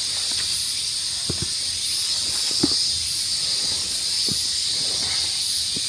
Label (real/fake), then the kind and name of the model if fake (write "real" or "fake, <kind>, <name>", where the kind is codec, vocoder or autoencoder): real